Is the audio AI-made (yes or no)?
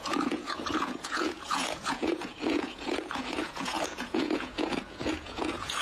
yes